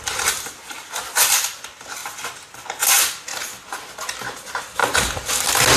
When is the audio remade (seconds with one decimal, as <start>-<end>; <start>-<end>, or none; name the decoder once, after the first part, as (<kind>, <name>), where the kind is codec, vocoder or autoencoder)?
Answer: 2.0-2.9 (vocoder, BigVGAN v2); 4.8-5.8